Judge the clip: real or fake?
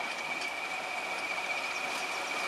real